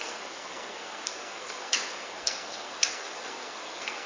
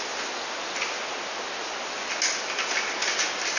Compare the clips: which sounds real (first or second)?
second